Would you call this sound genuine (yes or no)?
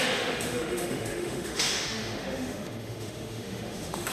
no